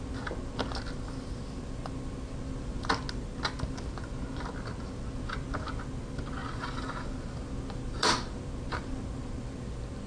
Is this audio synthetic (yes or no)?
no